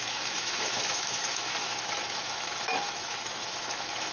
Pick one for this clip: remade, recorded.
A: remade